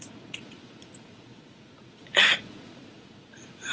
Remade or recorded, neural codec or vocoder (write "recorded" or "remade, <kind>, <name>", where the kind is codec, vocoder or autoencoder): remade, vocoder, Vocos